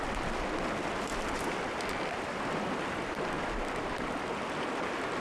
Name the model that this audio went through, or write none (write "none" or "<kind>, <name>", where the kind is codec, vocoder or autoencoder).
none